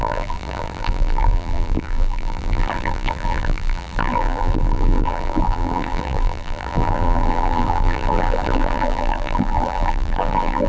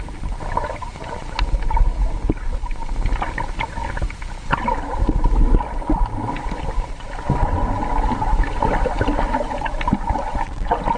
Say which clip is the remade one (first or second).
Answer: first